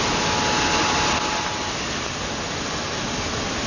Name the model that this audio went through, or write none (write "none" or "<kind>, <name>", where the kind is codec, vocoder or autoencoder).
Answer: none